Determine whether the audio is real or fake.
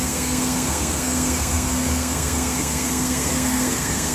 fake